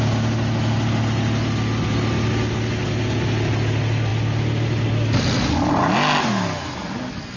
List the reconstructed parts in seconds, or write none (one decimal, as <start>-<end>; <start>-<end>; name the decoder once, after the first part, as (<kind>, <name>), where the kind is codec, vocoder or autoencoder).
none